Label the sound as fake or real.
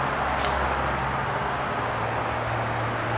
real